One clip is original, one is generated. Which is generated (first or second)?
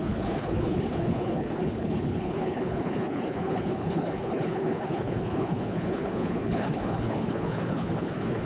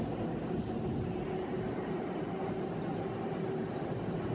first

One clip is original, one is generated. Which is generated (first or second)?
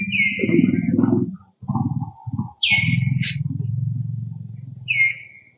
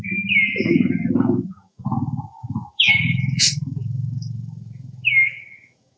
second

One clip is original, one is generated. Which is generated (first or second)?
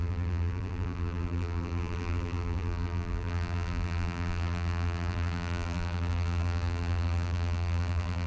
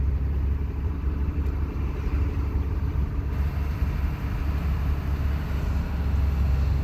first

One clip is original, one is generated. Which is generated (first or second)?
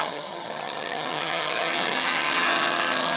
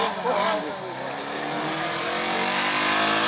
first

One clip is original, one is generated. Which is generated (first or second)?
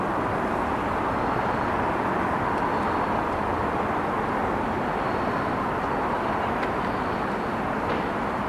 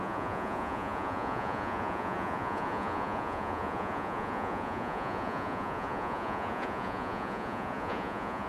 second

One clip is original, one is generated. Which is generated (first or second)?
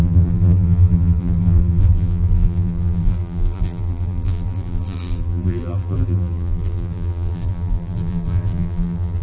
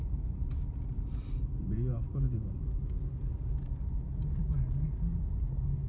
first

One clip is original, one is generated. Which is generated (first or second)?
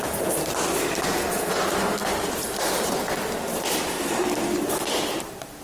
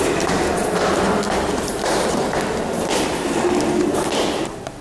first